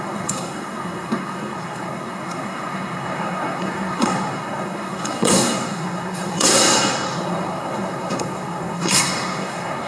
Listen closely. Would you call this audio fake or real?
fake